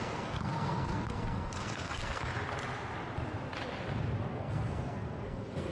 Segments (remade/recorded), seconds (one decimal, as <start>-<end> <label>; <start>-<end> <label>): 0.0-2.3 remade; 2.3-4.3 recorded; 4.3-5.7 remade